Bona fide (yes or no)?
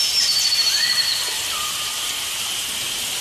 yes